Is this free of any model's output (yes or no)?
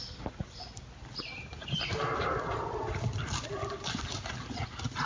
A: yes